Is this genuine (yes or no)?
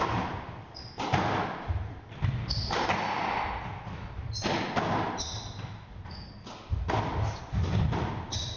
yes